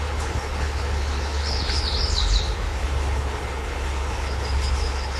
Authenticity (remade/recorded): remade